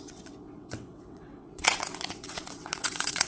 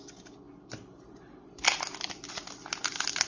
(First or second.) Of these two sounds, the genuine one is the second